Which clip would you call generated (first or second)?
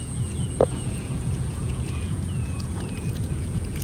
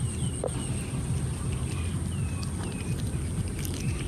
first